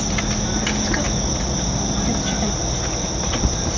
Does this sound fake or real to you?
real